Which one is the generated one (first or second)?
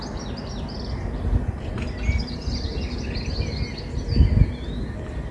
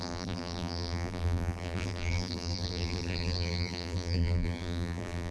second